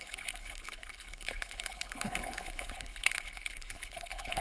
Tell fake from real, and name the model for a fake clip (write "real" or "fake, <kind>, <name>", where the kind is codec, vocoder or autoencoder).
fake, codec, HILCodec